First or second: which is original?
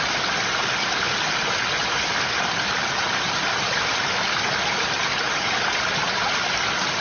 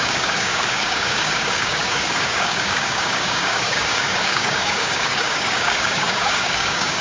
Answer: first